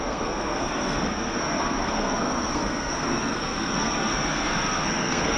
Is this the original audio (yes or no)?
no